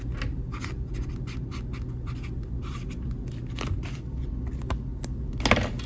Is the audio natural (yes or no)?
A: yes